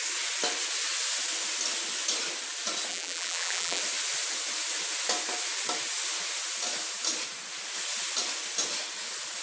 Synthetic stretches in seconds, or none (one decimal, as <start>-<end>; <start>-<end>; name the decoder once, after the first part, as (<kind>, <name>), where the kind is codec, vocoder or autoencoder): 2.9-3.8 (vocoder, BigVGAN v2)